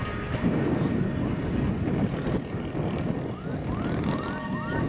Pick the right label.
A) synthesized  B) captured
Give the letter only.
B